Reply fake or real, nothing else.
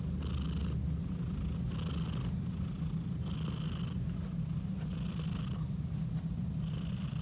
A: real